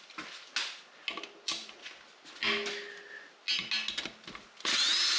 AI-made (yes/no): no